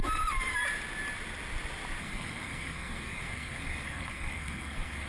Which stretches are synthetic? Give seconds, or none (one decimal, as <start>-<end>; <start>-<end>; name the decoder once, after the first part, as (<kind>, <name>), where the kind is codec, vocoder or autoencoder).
2.0-5.1 (codec, SNAC)